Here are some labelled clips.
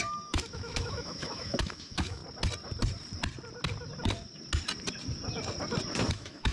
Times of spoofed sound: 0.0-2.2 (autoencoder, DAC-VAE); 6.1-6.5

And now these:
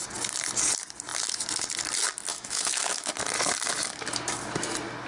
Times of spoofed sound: 2.3-3.1 (autoencoder, DAC-VAE)

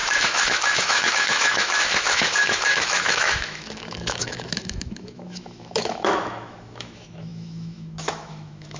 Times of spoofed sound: 0.0-8.8 (autoencoder, DAC-VAE)